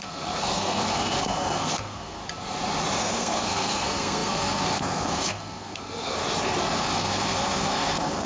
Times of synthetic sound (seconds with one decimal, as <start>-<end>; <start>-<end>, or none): 0.0-2.2; 3.0-6.2; 6.8-8.3